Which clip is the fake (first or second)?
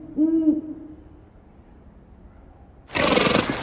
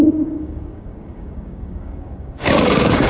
second